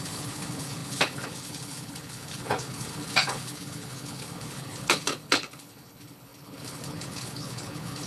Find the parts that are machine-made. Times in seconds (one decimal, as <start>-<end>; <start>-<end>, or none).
0.0-8.1